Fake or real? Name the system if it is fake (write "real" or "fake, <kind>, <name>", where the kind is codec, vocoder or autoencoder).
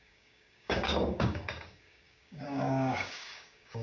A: fake, codec, DAC